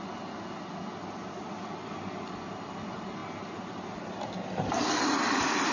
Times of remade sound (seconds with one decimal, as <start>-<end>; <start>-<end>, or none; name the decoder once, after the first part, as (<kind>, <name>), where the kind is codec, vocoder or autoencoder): none